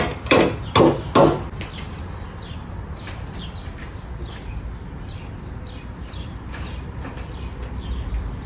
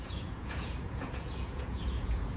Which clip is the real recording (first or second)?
first